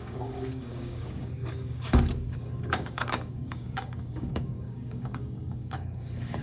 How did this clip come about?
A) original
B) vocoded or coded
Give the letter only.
B